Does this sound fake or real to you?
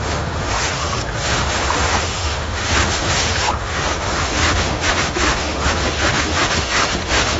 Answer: fake